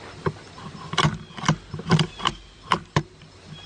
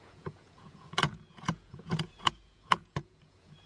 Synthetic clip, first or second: second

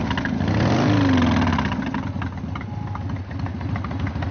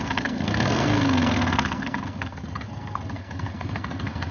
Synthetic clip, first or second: second